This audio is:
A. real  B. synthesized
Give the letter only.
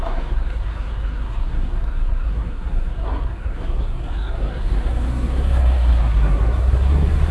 B